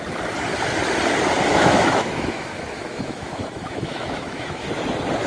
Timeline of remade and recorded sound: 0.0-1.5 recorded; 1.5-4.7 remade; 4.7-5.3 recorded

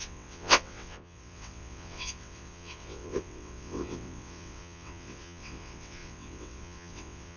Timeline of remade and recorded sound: 0.0-7.4 remade

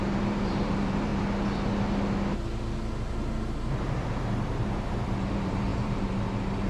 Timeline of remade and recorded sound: 0.0-1.1 remade; 1.1-3.1 recorded; 3.1-6.7 remade

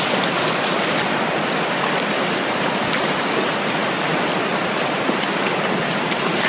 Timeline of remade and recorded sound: 0.0-6.5 recorded